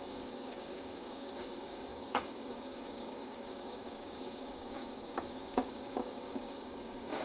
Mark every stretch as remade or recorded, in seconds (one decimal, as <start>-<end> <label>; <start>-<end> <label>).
0.0-7.2 remade